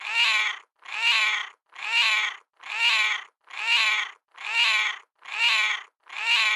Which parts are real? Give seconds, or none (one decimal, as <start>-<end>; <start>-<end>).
0.0-6.6